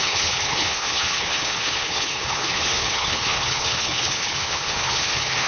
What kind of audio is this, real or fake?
fake